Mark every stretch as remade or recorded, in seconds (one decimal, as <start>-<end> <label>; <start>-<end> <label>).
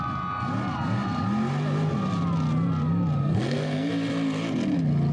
0.0-3.2 recorded; 3.2-3.9 remade; 3.9-5.1 recorded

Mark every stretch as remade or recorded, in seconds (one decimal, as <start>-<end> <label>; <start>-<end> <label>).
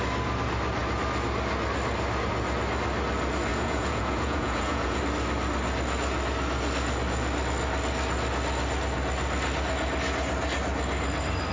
0.0-3.5 recorded; 3.5-5.0 remade; 5.0-11.5 recorded